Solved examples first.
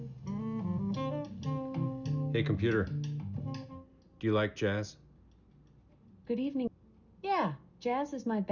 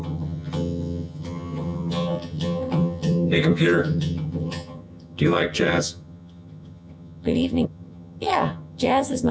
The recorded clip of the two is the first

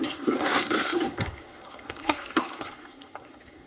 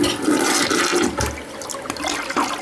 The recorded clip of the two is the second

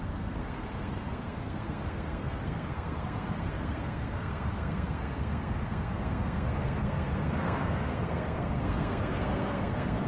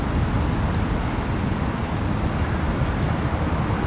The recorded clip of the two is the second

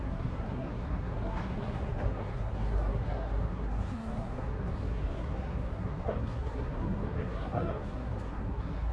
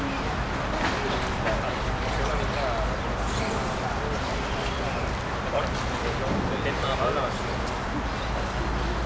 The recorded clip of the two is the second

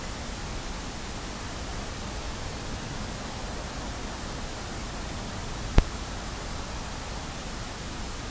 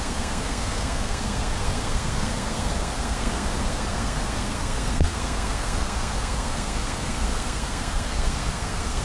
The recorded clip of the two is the first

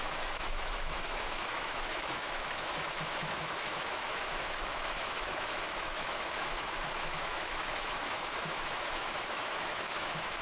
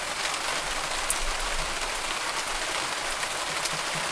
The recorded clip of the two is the second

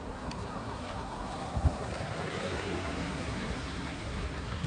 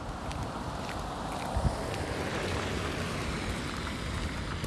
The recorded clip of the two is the second